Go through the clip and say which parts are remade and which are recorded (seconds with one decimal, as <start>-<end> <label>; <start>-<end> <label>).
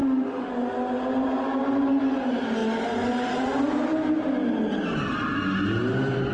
0.0-0.5 remade; 0.5-6.3 recorded